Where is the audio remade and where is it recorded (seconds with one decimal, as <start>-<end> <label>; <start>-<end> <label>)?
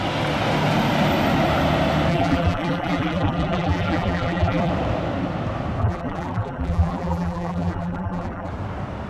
0.0-2.1 recorded; 2.1-4.7 remade; 4.7-5.8 recorded; 5.8-8.5 remade; 8.5-9.1 recorded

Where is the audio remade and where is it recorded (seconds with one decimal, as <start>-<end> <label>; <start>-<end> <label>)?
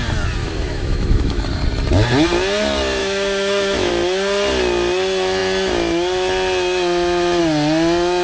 0.0-0.4 recorded; 0.4-1.4 remade; 1.4-3.0 recorded; 3.0-3.9 remade; 3.9-8.2 recorded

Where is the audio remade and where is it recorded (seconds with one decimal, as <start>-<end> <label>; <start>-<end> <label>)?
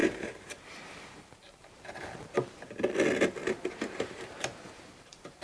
0.0-2.6 remade; 2.6-3.4 recorded; 3.4-5.4 remade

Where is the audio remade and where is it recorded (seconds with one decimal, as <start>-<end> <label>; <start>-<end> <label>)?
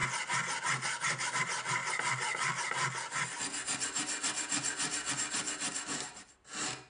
0.0-6.9 recorded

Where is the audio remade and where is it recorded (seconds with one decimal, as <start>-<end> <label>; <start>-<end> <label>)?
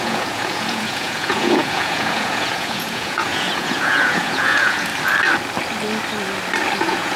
0.0-4.9 remade; 4.9-6.8 recorded; 6.8-7.2 remade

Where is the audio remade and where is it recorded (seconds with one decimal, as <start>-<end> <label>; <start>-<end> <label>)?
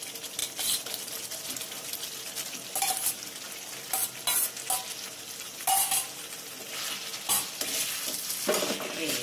0.0-9.2 recorded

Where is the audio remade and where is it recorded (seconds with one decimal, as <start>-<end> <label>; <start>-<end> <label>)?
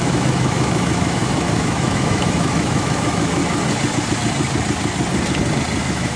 0.0-3.4 remade; 3.4-5.8 recorded; 5.8-6.2 remade